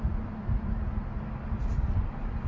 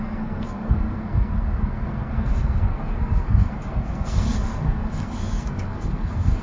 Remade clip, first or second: second